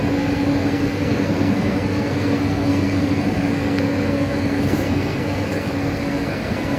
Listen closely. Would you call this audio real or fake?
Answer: fake